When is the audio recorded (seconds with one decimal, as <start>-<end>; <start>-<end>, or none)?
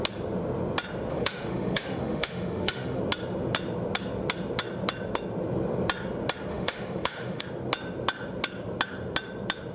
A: 0.0-1.1; 3.0-6.5; 7.4-9.7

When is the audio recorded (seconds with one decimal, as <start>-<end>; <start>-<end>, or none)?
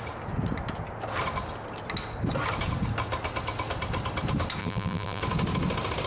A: 0.0-4.6; 5.2-6.1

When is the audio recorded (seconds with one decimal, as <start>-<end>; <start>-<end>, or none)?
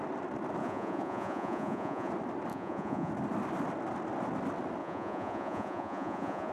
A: 0.0-0.6; 2.1-2.5; 3.1-4.8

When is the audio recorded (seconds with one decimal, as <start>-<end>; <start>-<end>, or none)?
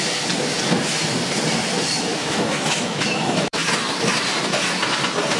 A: 0.0-2.1; 3.6-5.4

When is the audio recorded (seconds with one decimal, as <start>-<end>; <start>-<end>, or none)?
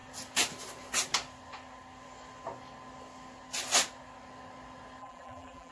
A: 0.0-5.0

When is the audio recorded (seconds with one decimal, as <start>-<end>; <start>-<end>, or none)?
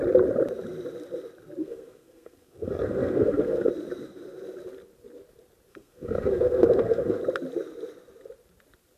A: 0.0-1.6; 3.7-5.7; 7.2-9.0